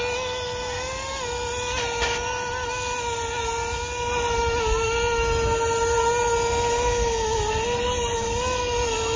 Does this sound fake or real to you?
real